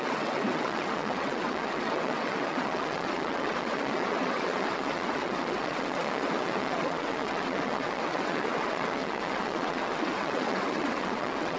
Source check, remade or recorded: remade